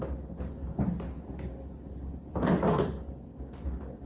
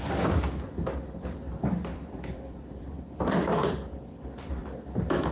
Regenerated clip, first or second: second